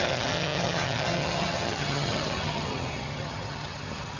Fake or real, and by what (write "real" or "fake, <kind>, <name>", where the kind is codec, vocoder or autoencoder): fake, vocoder, HiFi-GAN